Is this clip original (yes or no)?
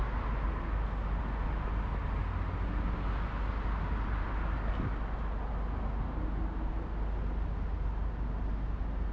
yes